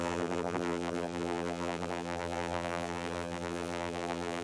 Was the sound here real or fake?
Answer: fake